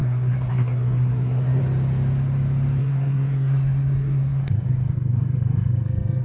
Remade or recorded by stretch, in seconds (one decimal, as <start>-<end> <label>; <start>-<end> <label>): 0.0-1.6 remade; 1.6-2.8 recorded; 2.8-6.2 remade